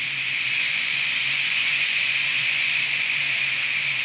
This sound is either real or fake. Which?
fake